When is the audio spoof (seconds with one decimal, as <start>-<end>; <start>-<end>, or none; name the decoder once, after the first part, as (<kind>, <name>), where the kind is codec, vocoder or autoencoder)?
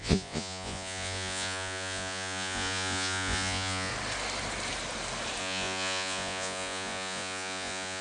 0.0-3.9 (vocoder, Vocos); 5.4-8.0